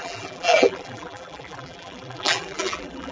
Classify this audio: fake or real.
fake